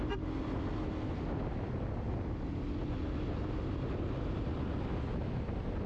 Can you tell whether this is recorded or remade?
recorded